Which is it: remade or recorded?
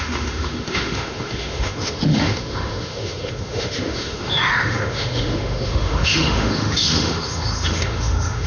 remade